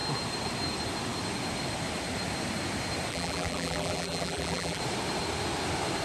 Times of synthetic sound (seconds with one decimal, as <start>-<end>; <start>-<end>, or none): 3.1-4.8